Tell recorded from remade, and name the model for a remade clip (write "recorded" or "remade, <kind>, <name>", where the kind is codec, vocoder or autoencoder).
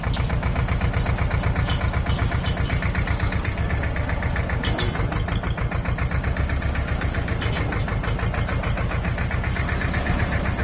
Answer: recorded